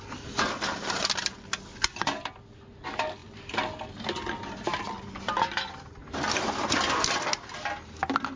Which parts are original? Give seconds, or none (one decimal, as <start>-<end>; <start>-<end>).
0.0-8.4